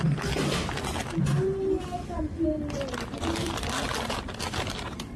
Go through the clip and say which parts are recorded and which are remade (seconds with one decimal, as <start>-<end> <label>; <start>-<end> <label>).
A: 0.0-5.2 recorded